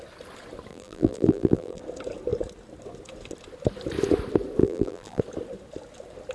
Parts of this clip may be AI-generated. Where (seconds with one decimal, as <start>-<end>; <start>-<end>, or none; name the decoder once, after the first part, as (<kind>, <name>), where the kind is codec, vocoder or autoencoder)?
0.7-1.8 (vocoder, BigVGAN v2); 4.6-5.2